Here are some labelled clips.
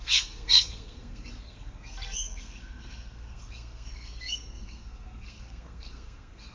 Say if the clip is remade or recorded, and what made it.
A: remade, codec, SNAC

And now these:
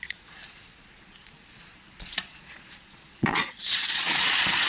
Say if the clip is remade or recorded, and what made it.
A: remade, vocoder, Vocos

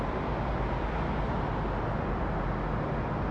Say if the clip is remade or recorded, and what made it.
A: recorded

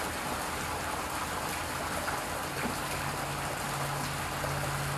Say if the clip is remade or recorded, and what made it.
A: recorded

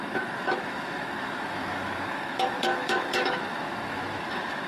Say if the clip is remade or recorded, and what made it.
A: remade, autoencoder, DAC-VAE